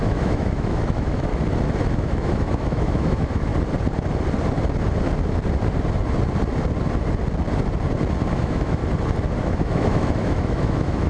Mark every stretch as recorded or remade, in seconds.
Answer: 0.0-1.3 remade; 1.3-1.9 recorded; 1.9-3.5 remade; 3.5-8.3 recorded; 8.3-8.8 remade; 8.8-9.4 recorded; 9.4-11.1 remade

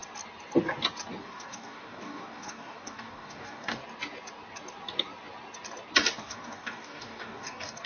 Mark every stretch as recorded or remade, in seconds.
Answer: 0.0-1.2 recorded; 1.2-3.8 remade; 3.8-6.2 recorded; 6.2-7.9 remade

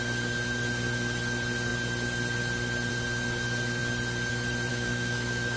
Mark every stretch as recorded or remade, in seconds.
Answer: 0.0-4.7 recorded; 4.7-5.6 remade

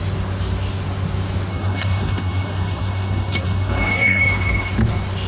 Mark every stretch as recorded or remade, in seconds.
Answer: 0.0-1.5 recorded; 1.5-4.7 remade; 4.7-5.3 recorded

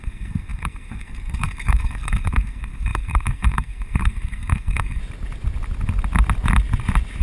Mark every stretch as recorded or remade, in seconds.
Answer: 0.0-5.0 remade; 5.0-7.2 recorded

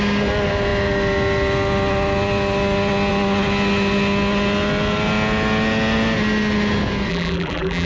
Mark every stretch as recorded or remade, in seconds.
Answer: 0.0-7.1 recorded; 7.1-7.9 remade

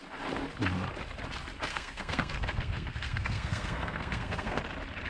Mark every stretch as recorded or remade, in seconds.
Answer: 0.0-1.7 recorded; 1.7-4.6 remade; 4.6-5.1 recorded